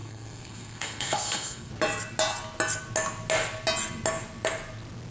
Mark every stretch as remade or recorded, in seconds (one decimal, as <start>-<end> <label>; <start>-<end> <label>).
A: 0.0-1.7 remade; 1.7-5.1 recorded